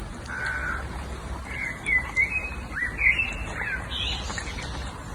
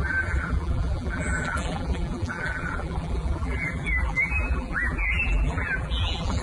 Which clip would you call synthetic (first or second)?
second